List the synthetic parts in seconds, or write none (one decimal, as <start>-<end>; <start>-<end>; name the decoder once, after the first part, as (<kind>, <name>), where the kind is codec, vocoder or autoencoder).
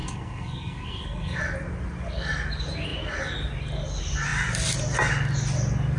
0.0-1.4 (codec, SNAC)